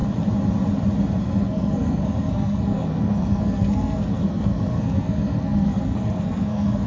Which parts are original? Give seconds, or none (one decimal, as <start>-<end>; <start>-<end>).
0.0-1.2